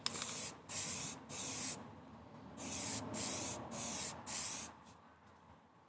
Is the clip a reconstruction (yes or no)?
no